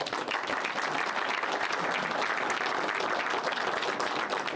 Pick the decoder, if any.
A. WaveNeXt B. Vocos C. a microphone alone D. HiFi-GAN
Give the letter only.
C